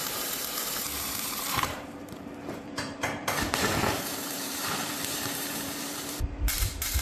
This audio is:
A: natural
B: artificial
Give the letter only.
B